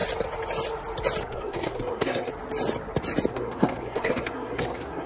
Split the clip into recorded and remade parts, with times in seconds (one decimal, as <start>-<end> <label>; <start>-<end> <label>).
0.0-1.2 recorded; 1.2-2.3 remade; 2.3-3.3 recorded; 3.3-5.1 remade